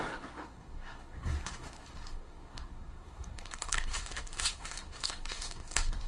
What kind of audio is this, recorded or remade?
remade